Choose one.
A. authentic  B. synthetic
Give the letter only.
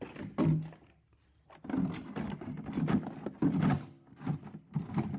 A